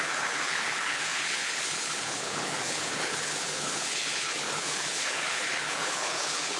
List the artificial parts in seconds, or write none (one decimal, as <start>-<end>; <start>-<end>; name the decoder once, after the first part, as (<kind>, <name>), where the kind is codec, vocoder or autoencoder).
0.0-6.6 (codec, HILCodec)